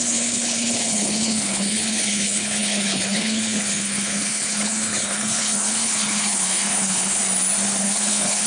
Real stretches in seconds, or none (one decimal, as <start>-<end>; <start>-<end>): 7.2-7.8